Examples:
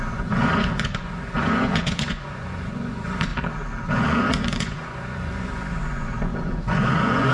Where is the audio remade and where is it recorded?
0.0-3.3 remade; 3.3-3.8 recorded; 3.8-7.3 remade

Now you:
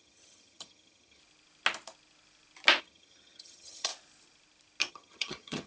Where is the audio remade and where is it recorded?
0.0-1.2 remade; 1.2-2.8 recorded; 2.8-3.9 remade; 3.9-4.9 recorded; 4.9-5.7 remade